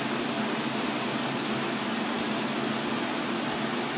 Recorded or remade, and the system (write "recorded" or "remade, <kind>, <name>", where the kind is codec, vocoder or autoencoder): recorded